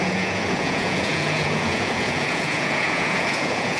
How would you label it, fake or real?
fake